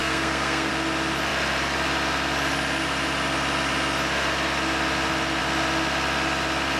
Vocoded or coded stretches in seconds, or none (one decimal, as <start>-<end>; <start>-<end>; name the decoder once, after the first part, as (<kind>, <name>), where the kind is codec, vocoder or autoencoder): 0.0-0.7 (codec, SNAC)